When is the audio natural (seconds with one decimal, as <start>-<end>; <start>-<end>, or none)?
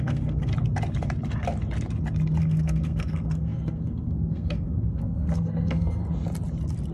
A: 0.5-2.4; 6.0-6.9